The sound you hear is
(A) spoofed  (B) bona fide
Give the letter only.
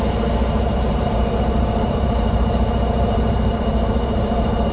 A